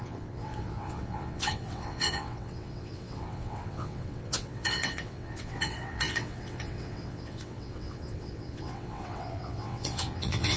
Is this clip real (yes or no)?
no